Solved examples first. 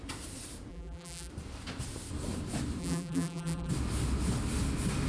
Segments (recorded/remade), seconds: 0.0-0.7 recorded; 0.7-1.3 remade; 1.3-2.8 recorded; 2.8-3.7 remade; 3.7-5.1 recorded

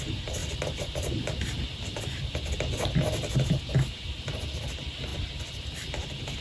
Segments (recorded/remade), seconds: 0.0-0.4 recorded; 0.4-3.6 remade; 3.6-5.1 recorded; 5.1-5.9 remade; 5.9-6.4 recorded

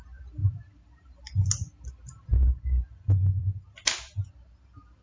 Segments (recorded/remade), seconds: 0.0-5.0 recorded

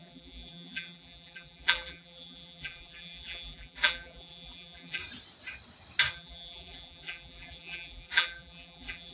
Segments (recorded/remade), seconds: 0.0-5.0 remade; 5.0-6.1 recorded; 6.1-9.1 remade